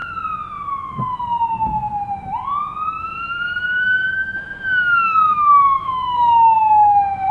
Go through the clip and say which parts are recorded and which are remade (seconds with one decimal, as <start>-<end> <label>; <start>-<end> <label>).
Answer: 0.0-3.0 recorded; 3.0-7.3 remade